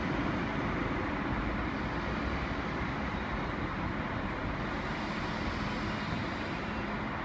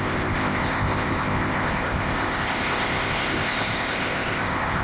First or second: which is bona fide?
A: first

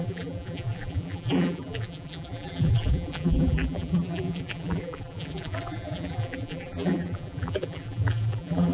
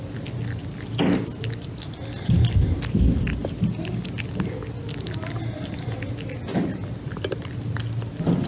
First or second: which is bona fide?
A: second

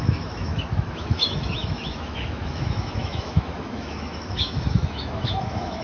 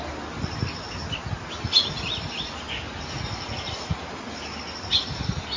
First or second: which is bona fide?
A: second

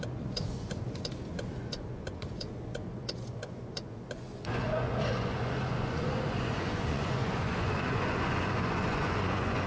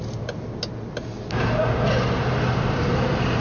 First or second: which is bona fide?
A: second